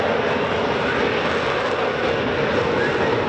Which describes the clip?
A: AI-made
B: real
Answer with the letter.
B